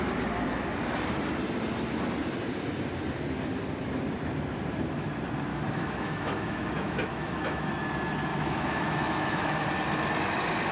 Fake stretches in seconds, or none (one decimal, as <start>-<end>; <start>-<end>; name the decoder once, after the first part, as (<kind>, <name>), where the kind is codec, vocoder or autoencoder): 5.5-7.7 (autoencoder, DAC-VAE); 8.3-9.7